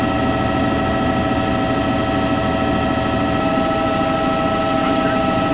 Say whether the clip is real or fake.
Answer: real